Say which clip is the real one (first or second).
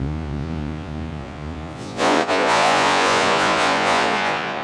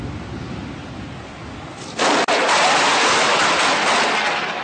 second